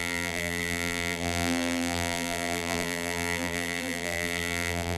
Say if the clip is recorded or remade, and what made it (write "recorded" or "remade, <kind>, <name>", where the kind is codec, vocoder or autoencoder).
remade, vocoder, BigVGAN v2